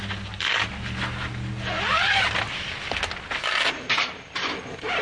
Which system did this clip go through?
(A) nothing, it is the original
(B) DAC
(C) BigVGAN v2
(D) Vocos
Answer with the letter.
A